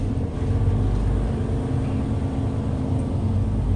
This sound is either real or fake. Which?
real